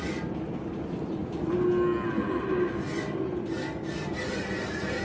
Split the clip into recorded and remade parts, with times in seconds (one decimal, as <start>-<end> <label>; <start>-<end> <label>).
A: 0.0-5.0 recorded